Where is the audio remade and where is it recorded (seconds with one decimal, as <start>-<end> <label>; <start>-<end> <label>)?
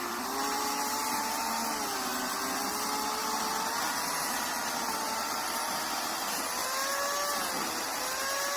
0.0-8.6 recorded